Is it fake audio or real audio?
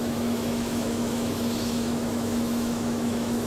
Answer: fake